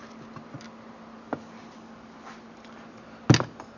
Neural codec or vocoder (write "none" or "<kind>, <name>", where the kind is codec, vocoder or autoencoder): none